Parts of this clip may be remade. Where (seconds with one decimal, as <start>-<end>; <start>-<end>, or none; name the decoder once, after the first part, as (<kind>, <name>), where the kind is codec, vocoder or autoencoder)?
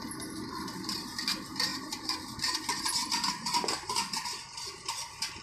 none